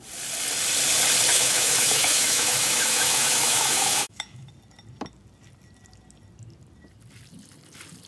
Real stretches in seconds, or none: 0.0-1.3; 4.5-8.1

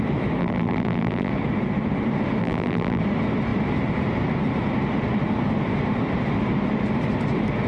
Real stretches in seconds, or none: 0.0-0.4; 1.3-2.4; 3.0-7.7

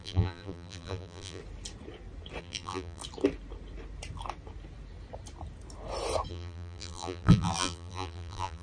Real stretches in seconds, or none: 1.4-2.4; 3.0-6.3

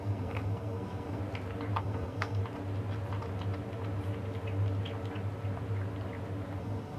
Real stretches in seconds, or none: 1.2-1.8; 2.4-6.6

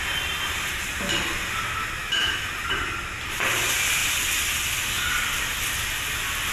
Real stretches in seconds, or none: 0.0-2.0; 2.5-6.5

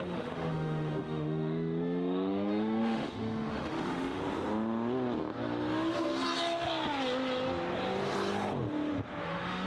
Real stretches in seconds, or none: 4.2-9.2

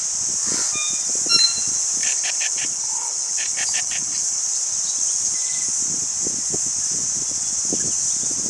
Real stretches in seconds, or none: 0.0-2.0; 4.4-8.5